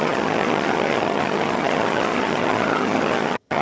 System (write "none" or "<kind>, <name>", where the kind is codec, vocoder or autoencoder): vocoder, HiFi-GAN